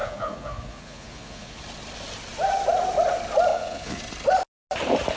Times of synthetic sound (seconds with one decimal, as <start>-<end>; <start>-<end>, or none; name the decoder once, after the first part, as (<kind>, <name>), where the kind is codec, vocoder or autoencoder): 0.0-1.6 (vocoder, Vocos); 3.5-4.0